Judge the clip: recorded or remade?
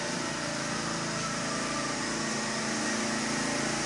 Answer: recorded